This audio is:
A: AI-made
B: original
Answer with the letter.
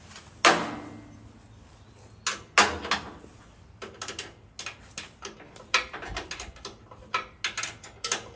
B